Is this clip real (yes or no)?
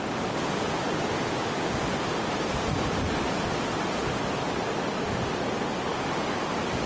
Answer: yes